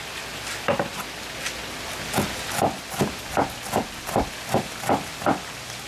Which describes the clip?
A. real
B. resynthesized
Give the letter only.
A